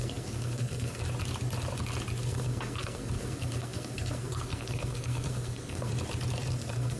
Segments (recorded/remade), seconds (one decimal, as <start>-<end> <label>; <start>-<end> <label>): 0.0-1.0 remade; 1.0-2.2 recorded; 2.2-5.9 remade; 5.9-6.5 recorded; 6.5-7.0 remade